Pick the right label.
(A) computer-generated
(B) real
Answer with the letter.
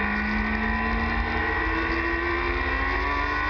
B